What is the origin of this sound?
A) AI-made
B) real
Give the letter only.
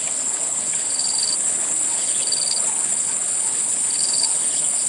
A